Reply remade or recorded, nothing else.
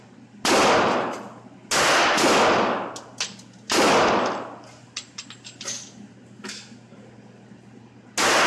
recorded